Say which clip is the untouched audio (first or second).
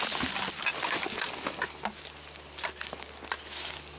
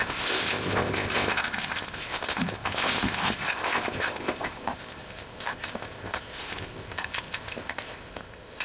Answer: first